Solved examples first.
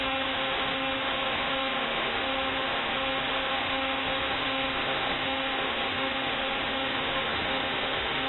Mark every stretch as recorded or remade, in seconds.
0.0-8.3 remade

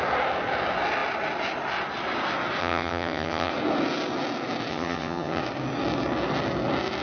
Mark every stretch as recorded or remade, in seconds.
0.0-2.6 recorded; 2.6-3.5 remade; 3.5-4.7 recorded; 4.7-5.4 remade; 5.4-7.0 recorded